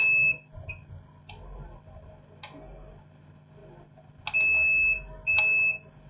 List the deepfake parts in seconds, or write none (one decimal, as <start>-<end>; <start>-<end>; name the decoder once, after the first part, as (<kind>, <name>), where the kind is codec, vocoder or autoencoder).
none

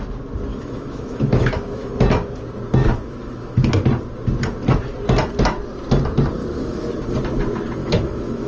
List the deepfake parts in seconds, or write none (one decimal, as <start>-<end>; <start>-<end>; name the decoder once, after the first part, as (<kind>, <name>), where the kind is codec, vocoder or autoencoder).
0.5-1.9 (autoencoder, DAC-VAE); 2.8-3.7; 6.4-6.9; 7.8-8.5

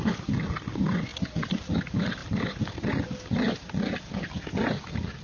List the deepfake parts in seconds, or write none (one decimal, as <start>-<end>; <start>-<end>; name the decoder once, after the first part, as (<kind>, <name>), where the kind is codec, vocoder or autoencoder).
none

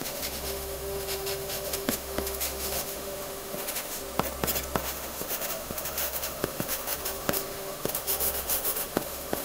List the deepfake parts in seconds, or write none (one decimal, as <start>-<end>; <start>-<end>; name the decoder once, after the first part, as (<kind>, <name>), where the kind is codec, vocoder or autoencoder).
0.0-4.0 (autoencoder, DAC-VAE); 4.8-9.4

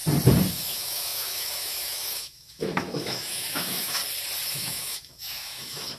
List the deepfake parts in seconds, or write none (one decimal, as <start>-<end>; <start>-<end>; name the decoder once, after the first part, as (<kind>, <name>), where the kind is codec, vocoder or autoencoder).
0.5-4.0 (autoencoder, DAC-VAE); 4.5-6.0

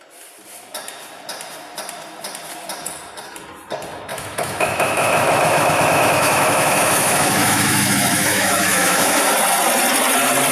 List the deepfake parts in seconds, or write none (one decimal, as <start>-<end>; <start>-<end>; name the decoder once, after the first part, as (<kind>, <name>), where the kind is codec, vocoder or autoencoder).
4.1-9.2 (autoencoder, DAC-VAE)

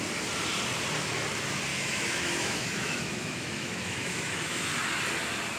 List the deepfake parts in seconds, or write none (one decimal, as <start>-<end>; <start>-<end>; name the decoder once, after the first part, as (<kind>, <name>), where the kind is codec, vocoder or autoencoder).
1.7-4.7 (autoencoder, DAC-VAE)

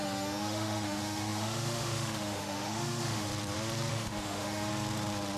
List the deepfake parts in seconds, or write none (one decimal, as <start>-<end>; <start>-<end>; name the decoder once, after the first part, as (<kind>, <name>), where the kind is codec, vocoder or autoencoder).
0.0-3.3 (autoencoder, DAC-VAE); 3.9-4.7